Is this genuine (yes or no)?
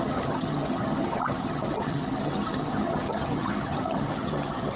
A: no